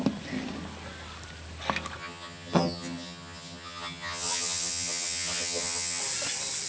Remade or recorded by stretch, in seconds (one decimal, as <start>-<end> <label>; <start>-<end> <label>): 0.0-2.0 recorded; 2.0-6.0 remade; 6.0-6.7 recorded